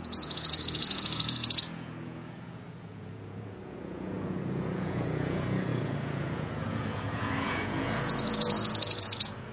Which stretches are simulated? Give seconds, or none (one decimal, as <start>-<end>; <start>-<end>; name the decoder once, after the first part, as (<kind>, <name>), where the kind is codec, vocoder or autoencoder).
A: 0.0-9.5 (vocoder, Vocos)